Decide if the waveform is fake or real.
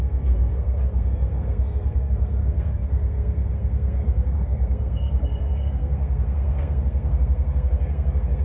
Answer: fake